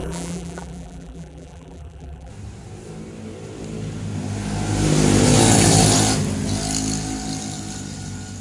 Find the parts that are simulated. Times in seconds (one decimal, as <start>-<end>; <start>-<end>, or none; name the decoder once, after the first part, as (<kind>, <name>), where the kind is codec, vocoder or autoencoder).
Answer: 0.0-2.3 (vocoder, BigVGAN v2)